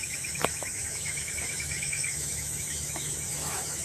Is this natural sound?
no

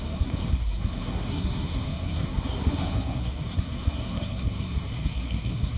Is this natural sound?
no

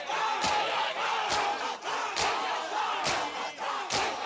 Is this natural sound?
yes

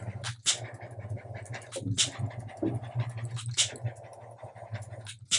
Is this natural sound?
yes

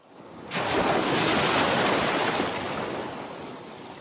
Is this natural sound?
yes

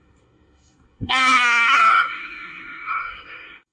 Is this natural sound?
no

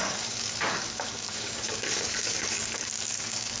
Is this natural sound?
no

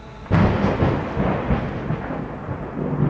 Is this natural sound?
yes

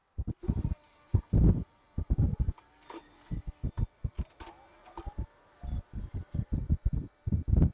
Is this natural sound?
yes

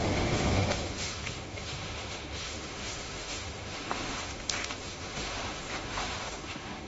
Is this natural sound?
no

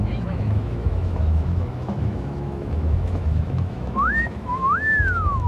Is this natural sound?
no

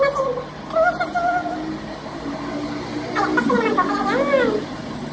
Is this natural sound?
yes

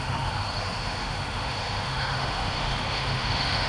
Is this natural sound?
no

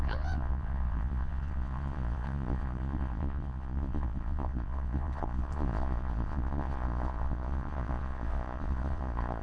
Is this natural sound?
no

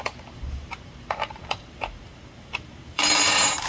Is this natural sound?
no